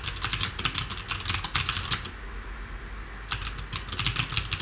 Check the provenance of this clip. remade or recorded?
recorded